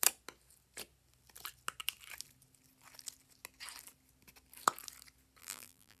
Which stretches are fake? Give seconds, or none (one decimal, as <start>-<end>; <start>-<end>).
5.4-6.0